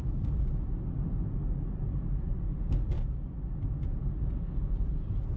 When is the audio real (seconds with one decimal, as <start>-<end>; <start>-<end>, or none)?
0.0-5.4